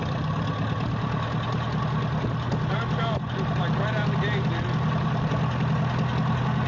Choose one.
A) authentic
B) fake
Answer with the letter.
A